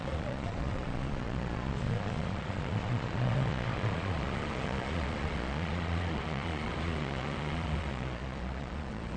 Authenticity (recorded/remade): remade